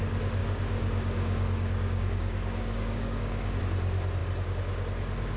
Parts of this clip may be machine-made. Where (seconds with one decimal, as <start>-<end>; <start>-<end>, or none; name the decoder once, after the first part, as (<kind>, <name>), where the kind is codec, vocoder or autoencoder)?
0.4-3.6 (codec, DAC)